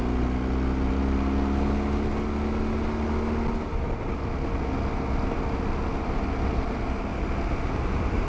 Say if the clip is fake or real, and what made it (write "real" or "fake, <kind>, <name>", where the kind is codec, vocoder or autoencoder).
real